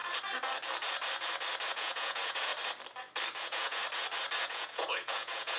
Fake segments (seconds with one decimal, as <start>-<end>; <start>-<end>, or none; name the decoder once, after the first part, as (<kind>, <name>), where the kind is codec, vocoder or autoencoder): 1.7-2.5 (vocoder, Vocos); 3.4-3.8; 4.4-5.6